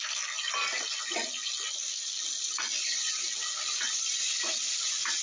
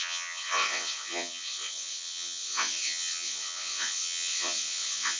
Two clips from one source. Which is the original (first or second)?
first